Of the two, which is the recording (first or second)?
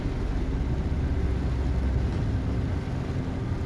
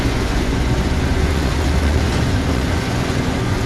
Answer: first